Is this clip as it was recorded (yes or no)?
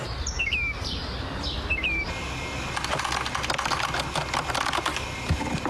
yes